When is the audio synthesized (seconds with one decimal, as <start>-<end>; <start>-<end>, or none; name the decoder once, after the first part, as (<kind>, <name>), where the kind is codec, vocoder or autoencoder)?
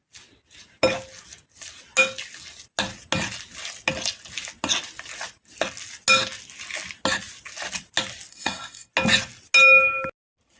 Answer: 8.3-8.9 (codec, SNAC)